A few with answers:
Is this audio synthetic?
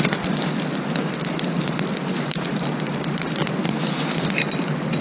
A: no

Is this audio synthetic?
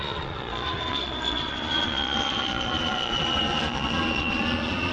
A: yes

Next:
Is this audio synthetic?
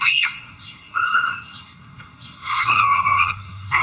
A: yes